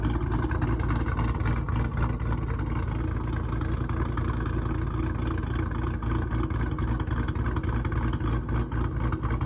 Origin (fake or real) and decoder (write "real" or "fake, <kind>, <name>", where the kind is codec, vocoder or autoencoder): real